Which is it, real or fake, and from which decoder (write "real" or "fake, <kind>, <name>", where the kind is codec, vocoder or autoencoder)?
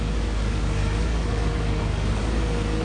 fake, codec, DAC